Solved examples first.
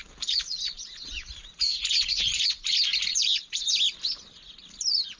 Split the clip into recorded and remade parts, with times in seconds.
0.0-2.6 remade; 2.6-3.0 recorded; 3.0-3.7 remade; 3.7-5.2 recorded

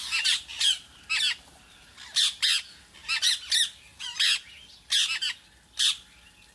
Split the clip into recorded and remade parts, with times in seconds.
0.0-6.5 recorded

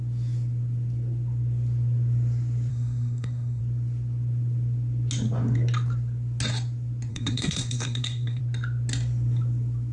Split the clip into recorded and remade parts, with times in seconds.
0.0-2.7 recorded; 2.7-3.6 remade; 3.6-7.1 recorded; 7.1-8.4 remade; 8.4-9.9 recorded

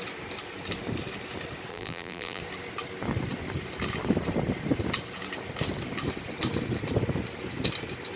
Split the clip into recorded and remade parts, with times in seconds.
0.0-1.7 recorded; 1.7-2.4 remade; 2.4-8.2 recorded

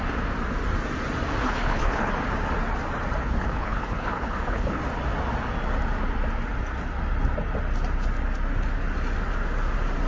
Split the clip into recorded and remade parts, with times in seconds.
0.0-1.4 recorded; 1.4-2.1 remade; 2.1-3.2 recorded; 3.2-4.8 remade; 4.8-10.1 recorded